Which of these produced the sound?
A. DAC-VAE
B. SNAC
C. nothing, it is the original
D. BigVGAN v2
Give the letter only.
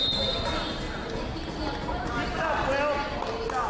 C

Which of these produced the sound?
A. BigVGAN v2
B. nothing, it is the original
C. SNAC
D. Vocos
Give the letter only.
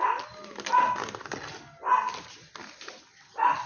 B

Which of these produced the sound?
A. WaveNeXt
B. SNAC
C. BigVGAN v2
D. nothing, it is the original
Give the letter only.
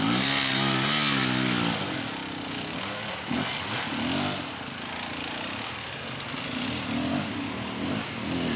D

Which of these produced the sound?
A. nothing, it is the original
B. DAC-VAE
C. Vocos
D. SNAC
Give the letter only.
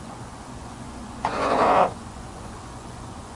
C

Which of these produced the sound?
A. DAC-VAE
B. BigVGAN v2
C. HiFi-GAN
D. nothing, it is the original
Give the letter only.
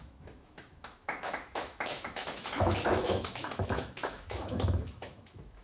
A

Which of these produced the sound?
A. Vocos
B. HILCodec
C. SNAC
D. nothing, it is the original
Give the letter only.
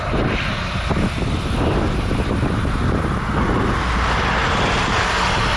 D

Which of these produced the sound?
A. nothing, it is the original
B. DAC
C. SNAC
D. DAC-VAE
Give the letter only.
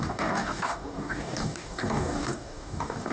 B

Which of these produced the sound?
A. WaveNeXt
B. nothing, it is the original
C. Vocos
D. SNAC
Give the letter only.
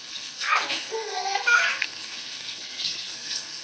D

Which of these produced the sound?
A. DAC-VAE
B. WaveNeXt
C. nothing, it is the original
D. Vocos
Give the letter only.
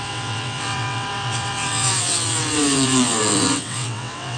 B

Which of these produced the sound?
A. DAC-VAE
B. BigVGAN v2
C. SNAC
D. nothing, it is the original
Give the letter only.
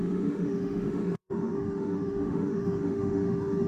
A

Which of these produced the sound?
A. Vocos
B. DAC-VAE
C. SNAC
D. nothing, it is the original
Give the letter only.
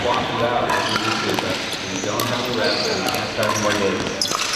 D